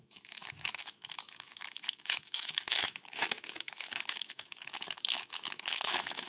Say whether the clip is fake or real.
fake